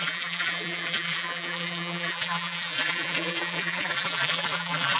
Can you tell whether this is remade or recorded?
remade